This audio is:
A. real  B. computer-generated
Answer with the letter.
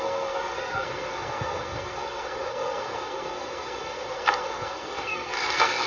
B